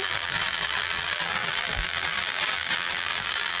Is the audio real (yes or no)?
no